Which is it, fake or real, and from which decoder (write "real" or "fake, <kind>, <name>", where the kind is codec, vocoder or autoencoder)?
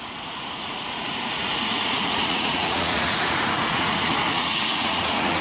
fake, vocoder, Vocos